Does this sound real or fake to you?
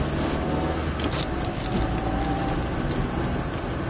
real